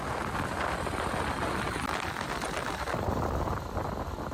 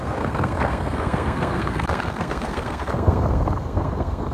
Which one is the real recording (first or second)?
first